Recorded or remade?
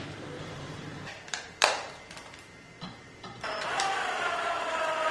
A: remade